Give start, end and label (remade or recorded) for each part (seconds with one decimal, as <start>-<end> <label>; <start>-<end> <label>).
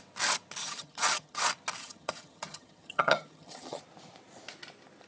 0.0-0.6 recorded; 0.6-1.4 remade; 1.4-1.8 recorded; 1.8-3.8 remade; 3.8-5.1 recorded